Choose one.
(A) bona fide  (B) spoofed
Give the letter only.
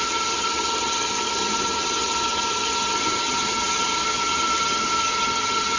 B